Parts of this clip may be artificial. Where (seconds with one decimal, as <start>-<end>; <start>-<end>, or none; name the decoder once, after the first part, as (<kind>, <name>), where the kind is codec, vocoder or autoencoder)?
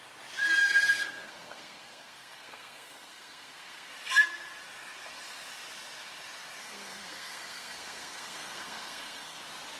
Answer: 0.6-3.9 (codec, SNAC); 6.6-9.4